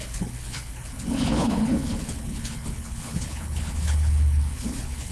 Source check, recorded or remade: remade